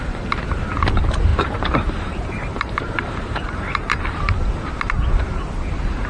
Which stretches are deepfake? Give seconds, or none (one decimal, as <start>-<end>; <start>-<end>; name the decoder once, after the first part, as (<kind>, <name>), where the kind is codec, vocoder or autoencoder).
1.3-4.2 (vocoder, BigVGAN v2)